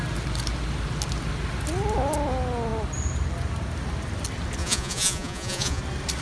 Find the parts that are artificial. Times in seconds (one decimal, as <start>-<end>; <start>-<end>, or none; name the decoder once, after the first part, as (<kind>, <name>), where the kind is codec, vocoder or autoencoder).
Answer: 4.6-5.8 (vocoder, Vocos)